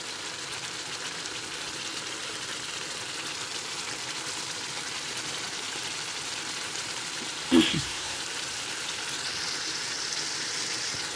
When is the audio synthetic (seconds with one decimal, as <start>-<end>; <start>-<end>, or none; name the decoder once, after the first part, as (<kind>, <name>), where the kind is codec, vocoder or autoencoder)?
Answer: 7.7-8.2 (codec, SNAC)